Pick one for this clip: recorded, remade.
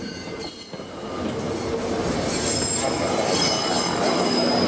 recorded